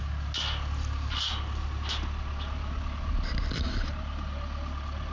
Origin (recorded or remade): recorded